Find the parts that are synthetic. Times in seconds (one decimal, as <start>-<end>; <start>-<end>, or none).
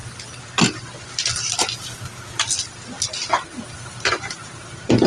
none